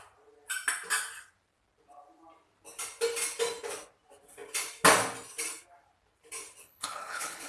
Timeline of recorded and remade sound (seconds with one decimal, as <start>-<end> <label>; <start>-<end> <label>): 0.0-6.6 recorded; 6.6-7.5 remade